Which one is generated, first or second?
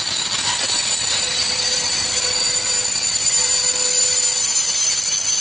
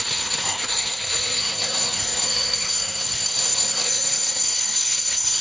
second